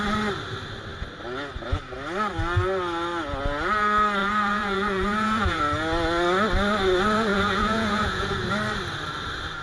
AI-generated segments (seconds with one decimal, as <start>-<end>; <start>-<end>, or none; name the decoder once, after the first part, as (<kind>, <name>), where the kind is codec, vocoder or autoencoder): 4.2-5.6 (vocoder, Vocos); 7.3-8.4